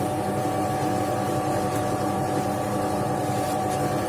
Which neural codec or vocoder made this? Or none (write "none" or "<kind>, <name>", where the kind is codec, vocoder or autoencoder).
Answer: vocoder, BigVGAN v2